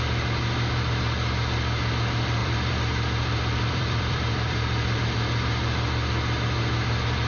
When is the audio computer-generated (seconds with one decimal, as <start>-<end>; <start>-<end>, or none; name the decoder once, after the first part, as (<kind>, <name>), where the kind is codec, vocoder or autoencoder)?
2.4-5.0 (vocoder, BigVGAN v2)